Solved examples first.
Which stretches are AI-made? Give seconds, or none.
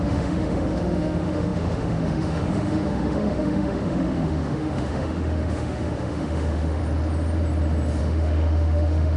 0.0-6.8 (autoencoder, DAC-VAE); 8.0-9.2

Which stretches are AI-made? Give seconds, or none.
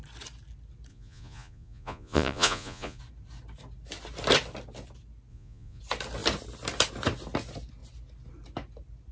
0.9-3.0 (vocoder, Vocos); 5.3-5.8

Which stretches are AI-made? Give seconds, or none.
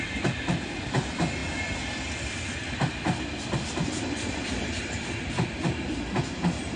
none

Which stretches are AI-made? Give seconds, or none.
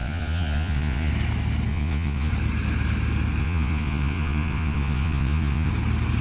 0.0-1.1 (vocoder, Vocos); 1.7-2.3; 3.4-5.7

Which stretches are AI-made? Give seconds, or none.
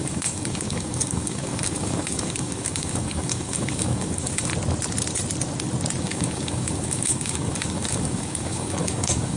0.0-4.5 (codec, DAC); 6.0-9.4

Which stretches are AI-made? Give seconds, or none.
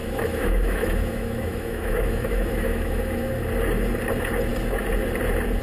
0.0-3.3 (autoencoder, DAC-VAE)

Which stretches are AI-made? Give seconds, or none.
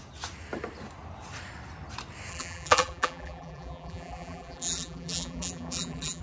2.3-6.2 (vocoder, BigVGAN v2)